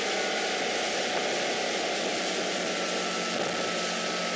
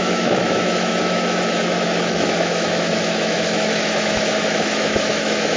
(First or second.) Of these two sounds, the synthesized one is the second